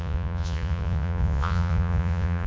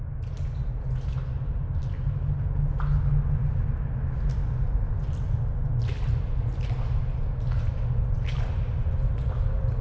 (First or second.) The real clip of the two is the second